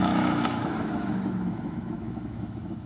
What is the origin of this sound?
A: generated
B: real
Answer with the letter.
A